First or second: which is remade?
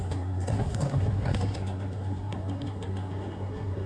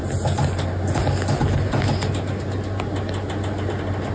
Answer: first